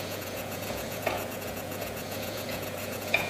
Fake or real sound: fake